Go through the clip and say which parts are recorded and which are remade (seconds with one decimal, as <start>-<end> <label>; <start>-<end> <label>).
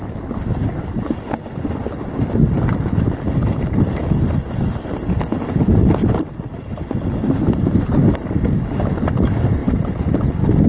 0.0-1.8 recorded; 1.8-2.8 remade; 2.8-10.7 recorded